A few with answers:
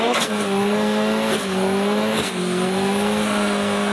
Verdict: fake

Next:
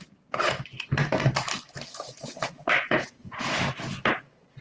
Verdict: real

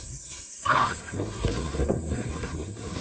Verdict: fake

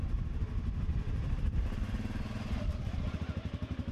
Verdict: real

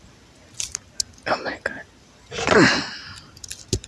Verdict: real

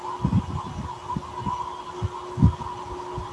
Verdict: real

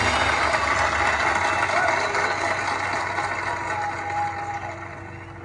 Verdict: real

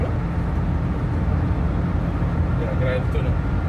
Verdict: real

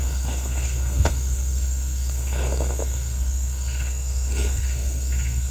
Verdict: fake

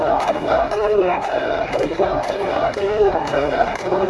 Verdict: fake